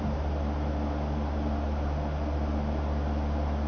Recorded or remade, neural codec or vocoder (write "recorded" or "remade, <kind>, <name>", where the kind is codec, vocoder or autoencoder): recorded